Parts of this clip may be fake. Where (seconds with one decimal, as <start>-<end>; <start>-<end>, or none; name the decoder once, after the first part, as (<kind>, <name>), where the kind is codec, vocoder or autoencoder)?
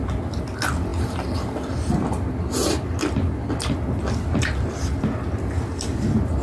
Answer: none